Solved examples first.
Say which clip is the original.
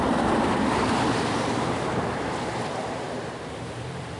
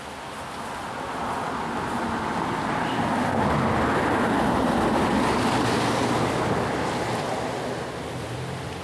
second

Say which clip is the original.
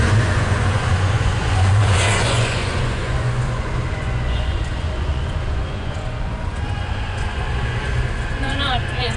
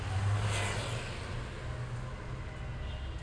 second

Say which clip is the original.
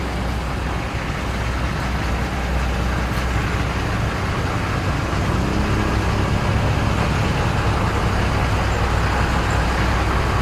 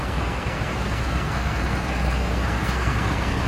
first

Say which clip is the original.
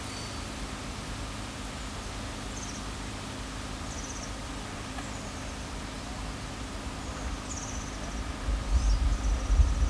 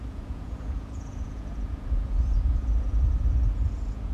first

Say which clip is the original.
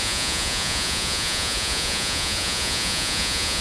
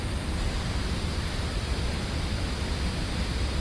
second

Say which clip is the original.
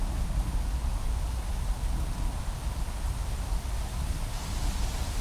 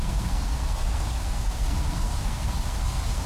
first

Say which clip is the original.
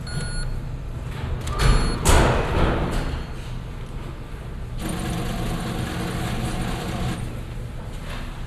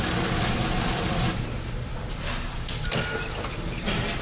first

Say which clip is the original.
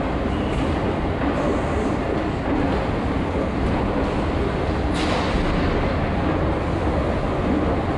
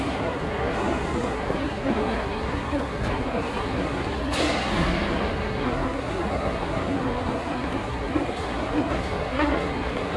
first